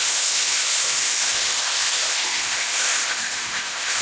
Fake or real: fake